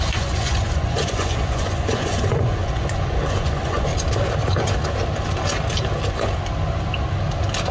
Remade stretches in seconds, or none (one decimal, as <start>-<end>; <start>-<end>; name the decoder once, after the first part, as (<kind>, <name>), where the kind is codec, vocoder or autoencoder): 0.0-3.9 (vocoder, Vocos)